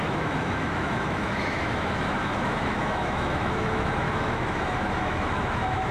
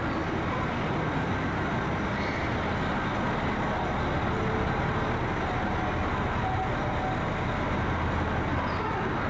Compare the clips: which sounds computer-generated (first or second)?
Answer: first